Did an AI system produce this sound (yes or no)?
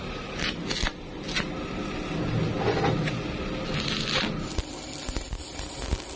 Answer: no